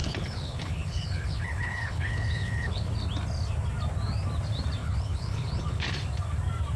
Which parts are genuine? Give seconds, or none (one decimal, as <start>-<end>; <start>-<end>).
2.9-4.8; 5.9-6.8